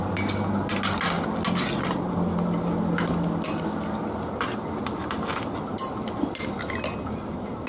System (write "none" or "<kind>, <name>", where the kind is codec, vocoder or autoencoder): none